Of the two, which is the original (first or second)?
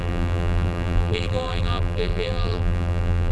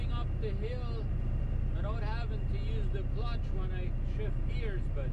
second